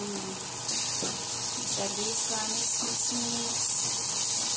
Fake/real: real